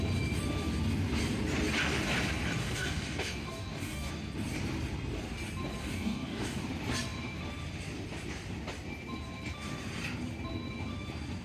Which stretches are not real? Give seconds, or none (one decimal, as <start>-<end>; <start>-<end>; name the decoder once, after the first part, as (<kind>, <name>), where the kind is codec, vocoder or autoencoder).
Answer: 2.6-4.1 (codec, DAC); 5.8-6.6